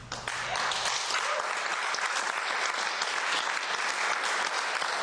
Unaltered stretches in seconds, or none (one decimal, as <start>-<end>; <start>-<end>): 0.0-5.0